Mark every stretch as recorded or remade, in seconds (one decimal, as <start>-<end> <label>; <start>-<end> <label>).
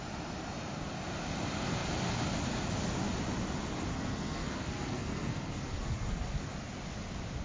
0.0-3.9 recorded; 3.9-6.4 remade; 6.4-7.4 recorded